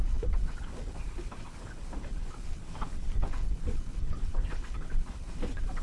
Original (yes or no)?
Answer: no